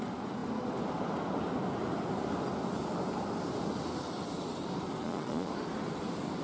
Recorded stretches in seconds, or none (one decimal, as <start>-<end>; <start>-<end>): 0.0-5.0; 5.5-6.4